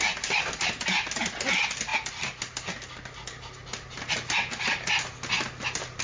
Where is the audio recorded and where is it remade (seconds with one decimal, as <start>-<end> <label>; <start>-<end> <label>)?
0.0-6.0 recorded